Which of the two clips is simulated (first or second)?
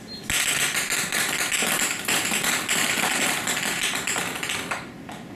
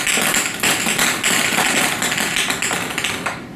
first